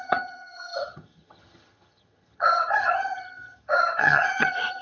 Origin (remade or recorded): remade